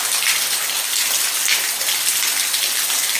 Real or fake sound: real